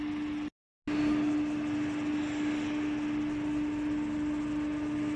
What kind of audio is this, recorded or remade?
recorded